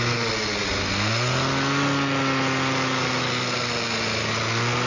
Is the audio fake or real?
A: real